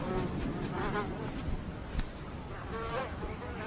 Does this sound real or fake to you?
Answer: real